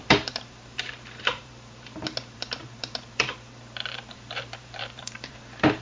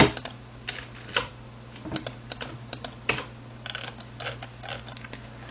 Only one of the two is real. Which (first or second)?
second